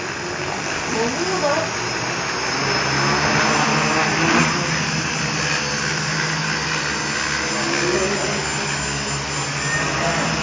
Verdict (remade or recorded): recorded